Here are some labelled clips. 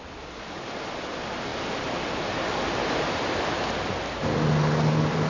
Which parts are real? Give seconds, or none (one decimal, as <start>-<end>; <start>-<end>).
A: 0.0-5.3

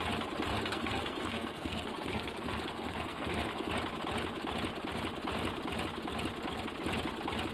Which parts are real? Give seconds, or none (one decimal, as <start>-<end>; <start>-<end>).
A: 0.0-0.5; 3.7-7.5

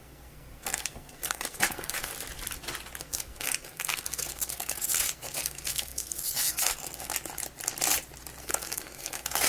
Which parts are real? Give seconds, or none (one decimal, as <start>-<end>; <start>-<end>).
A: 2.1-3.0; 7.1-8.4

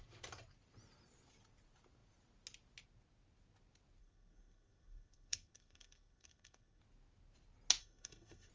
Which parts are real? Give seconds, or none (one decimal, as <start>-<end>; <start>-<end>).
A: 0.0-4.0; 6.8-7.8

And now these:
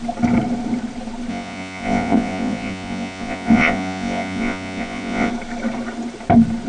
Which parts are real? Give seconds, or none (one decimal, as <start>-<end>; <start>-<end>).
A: 0.0-1.3; 5.3-6.7

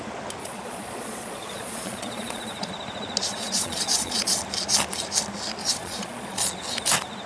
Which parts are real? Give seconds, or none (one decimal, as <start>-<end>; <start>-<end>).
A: 0.0-0.4; 2.7-3.3; 4.4-5.6; 6.4-7.3